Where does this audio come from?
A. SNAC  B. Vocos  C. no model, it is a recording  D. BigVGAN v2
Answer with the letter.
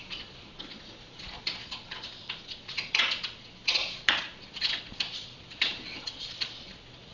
B